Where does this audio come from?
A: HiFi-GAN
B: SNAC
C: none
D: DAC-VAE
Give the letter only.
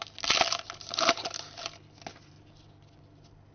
C